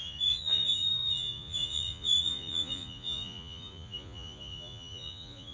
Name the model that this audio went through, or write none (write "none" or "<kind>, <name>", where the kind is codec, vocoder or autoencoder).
vocoder, Vocos